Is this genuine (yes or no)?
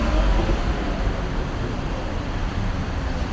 yes